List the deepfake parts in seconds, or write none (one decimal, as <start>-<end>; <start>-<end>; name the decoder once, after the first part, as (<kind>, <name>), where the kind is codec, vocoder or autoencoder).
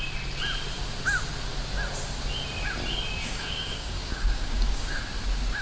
3.2-5.0 (codec, DAC)